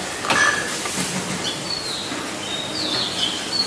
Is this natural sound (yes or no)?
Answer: yes